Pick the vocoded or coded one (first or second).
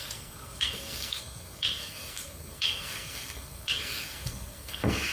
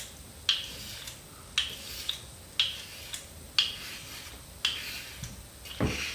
first